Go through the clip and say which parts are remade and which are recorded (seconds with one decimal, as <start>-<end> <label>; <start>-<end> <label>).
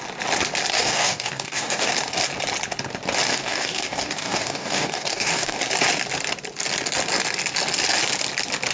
0.0-0.7 recorded; 0.7-1.9 remade; 1.9-3.3 recorded; 3.3-5.6 remade; 5.6-8.7 recorded